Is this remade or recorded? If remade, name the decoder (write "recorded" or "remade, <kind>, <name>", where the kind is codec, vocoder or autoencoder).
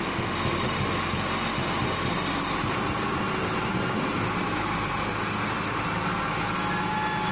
recorded